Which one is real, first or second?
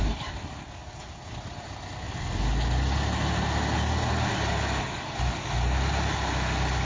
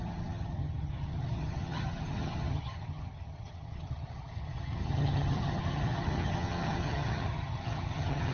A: first